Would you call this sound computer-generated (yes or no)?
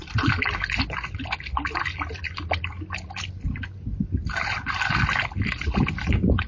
no